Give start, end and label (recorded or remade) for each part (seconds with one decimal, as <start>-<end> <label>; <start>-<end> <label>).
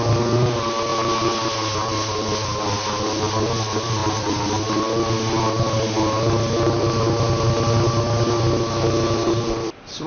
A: 0.0-10.1 recorded